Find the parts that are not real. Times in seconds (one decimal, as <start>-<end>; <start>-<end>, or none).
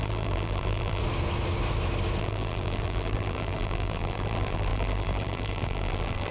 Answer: 0.0-1.0; 2.2-6.3